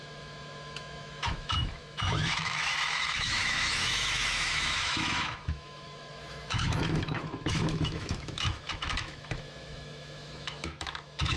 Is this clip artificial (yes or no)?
yes